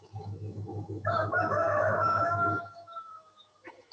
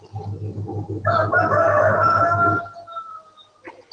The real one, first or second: second